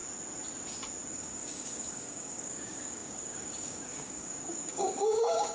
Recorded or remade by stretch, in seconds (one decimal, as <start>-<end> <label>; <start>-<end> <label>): 0.0-1.1 recorded; 1.1-5.5 remade